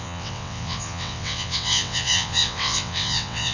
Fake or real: fake